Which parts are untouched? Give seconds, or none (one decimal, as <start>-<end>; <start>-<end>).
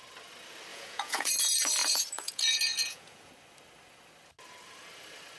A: 0.0-0.7; 1.3-1.8; 3.3-5.4